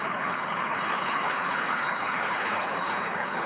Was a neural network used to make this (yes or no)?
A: yes